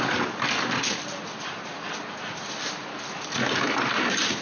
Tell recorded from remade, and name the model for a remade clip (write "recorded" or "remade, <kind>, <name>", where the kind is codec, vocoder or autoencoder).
recorded